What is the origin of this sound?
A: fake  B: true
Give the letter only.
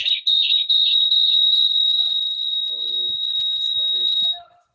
B